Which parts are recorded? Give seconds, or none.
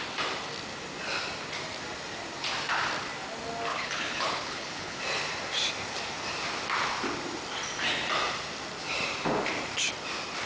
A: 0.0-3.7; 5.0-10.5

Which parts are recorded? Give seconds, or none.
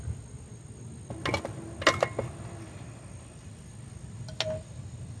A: 0.0-5.2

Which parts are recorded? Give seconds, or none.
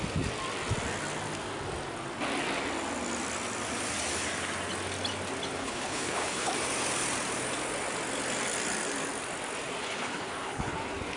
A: 0.0-5.6; 6.5-9.8; 10.7-11.2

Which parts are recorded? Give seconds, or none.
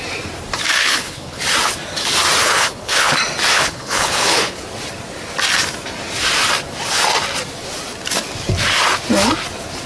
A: 0.0-0.8; 1.4-2.4; 3.1-3.5; 4.6-9.9